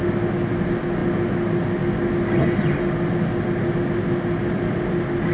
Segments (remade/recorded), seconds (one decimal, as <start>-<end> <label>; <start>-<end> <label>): 0.0-5.3 recorded